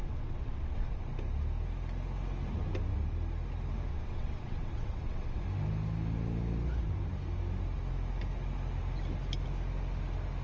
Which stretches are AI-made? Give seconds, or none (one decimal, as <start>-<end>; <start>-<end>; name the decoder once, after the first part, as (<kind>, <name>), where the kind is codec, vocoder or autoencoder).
0.0-1.0 (vocoder, WaveNeXt); 3.9-5.4